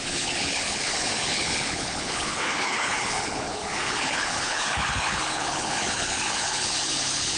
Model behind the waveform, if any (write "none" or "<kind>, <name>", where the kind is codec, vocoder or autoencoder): codec, HILCodec